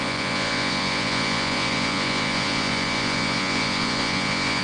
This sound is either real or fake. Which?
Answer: fake